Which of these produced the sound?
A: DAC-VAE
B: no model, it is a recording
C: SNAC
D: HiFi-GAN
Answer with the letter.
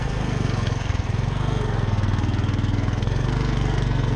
C